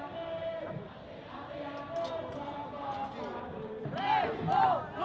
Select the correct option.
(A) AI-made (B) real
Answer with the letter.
B